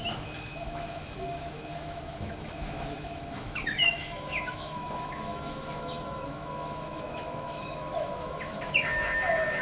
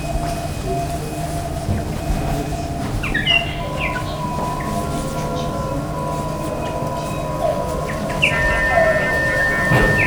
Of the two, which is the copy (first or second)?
first